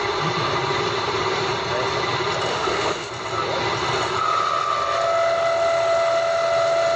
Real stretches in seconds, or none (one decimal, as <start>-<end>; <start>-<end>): 0.0-2.5; 3.1-7.0